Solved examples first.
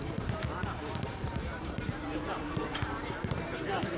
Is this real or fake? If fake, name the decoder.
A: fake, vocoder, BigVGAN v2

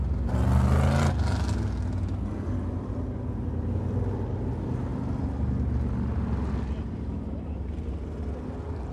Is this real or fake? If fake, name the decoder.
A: real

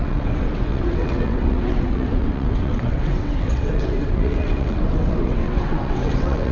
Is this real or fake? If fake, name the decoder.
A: fake, vocoder, WaveNeXt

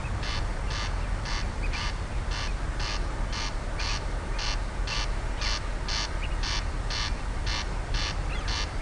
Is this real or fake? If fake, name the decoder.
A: real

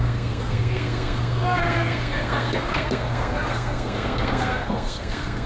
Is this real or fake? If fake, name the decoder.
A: fake, codec, SNAC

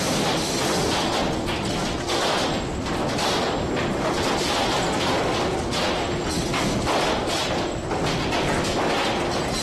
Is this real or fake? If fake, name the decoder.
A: real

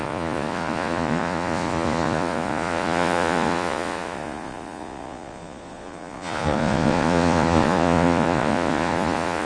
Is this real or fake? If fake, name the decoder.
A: fake, vocoder, Vocos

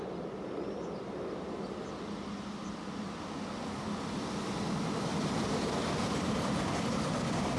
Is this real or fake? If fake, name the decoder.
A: real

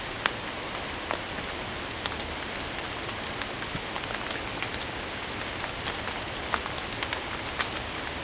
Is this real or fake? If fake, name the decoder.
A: real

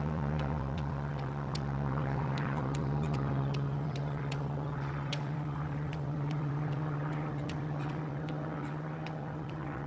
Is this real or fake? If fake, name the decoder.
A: fake, vocoder, WaveNeXt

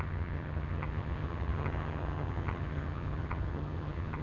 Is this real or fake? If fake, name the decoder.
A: fake, vocoder, HiFi-GAN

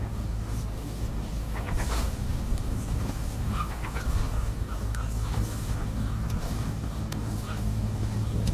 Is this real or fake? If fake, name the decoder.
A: fake, codec, DAC